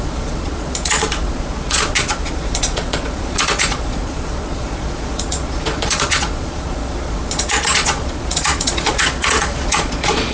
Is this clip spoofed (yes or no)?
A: yes